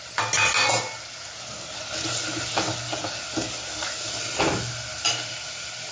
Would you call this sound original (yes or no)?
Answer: yes